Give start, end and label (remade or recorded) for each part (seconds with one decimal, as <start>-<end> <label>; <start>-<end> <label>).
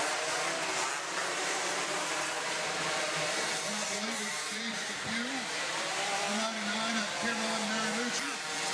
0.0-1.2 recorded; 1.2-5.5 remade; 5.5-8.7 recorded